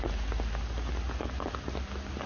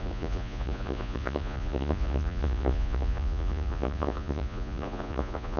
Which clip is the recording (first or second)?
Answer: first